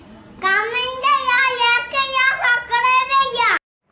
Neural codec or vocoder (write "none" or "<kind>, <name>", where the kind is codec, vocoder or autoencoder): none